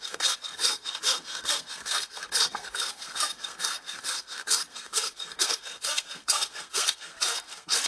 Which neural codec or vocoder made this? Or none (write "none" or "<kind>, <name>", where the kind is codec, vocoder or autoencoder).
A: codec, SNAC